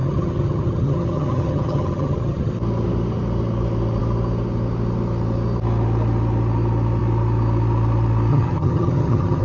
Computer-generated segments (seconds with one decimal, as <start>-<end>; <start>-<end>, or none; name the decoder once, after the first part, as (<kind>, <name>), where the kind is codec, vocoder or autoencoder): 0.0-2.5 (vocoder, HiFi-GAN); 8.3-9.4